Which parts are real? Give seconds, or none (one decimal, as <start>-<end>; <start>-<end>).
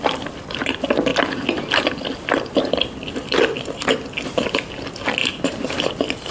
0.0-5.2; 5.8-6.3